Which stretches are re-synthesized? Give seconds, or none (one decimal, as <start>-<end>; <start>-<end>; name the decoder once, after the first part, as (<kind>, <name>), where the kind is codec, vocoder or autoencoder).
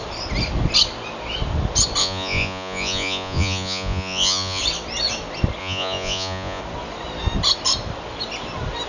2.0-4.6 (vocoder, Vocos); 5.6-6.6